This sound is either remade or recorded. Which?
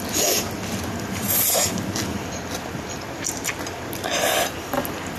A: recorded